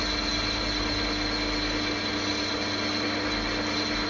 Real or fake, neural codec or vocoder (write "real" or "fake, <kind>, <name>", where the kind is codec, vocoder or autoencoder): real